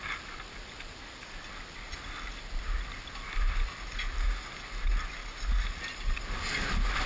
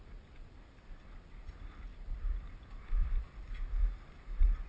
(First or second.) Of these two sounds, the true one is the first